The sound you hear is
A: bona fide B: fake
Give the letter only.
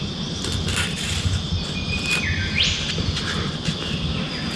A